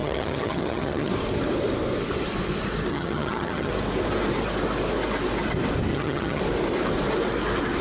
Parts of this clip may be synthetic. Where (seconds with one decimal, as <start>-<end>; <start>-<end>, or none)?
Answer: 0.0-1.1; 2.9-3.7; 5.9-6.4